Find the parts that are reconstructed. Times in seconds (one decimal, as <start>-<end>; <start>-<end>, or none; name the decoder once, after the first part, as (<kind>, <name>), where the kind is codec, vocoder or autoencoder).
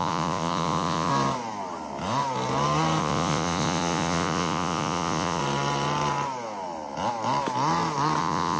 0.0-1.1 (vocoder, Vocos); 3.0-5.4; 8.2-8.6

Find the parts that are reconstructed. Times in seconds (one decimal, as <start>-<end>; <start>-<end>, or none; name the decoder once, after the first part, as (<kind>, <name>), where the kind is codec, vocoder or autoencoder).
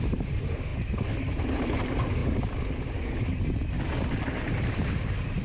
0.0-2.2 (vocoder, BigVGAN v2); 4.5-5.4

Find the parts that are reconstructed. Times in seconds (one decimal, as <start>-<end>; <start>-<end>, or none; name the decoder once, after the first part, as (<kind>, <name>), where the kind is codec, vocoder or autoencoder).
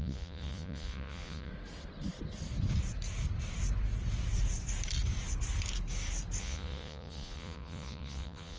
0.0-1.5 (vocoder, Vocos); 6.4-8.6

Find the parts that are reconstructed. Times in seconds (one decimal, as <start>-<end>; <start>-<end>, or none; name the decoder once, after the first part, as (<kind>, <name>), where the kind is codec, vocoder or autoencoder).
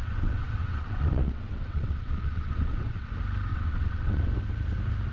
0.0-3.1 (vocoder, WaveNeXt); 3.5-4.3